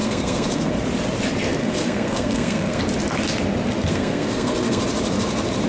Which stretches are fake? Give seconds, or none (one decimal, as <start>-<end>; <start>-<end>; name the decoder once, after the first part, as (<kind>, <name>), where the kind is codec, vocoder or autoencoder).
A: 0.0-0.7 (codec, SNAC); 1.6-2.8; 3.9-4.8